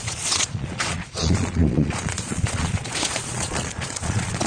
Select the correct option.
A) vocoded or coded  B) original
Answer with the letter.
A